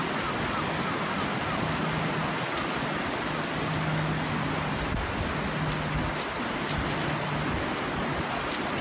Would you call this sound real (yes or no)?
yes